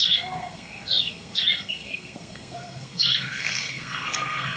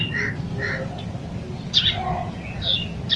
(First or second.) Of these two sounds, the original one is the second